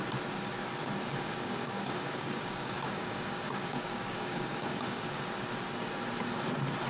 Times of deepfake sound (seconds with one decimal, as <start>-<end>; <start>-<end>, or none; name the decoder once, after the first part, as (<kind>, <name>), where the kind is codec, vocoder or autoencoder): 1.1-5.2 (codec, DAC)